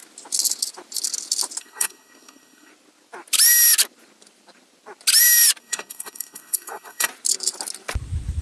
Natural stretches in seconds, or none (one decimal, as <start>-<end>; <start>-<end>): 0.0-1.6; 2.7-5.6; 7.1-8.4